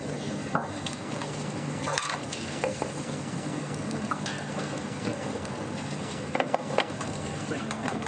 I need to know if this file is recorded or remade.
remade